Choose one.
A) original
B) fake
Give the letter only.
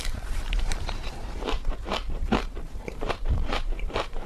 B